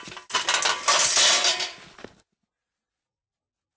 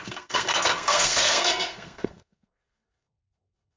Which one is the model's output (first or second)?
second